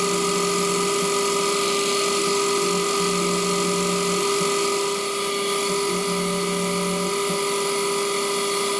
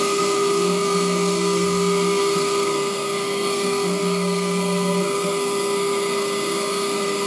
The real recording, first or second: first